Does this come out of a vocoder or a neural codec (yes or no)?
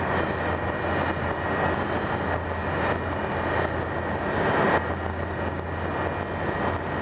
no